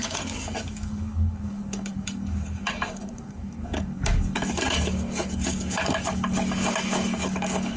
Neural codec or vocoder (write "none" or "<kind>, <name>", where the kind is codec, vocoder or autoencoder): codec, DAC